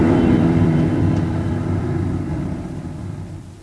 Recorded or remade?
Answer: remade